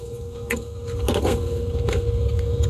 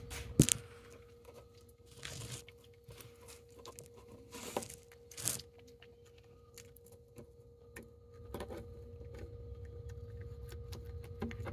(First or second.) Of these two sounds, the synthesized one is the first